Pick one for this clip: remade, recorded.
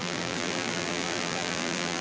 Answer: remade